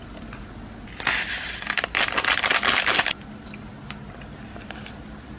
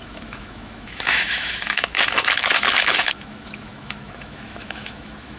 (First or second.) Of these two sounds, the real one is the first